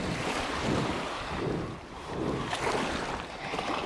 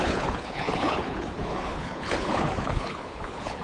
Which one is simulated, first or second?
second